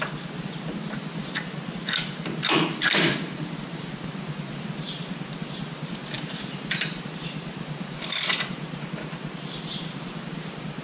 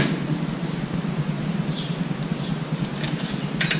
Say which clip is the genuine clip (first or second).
second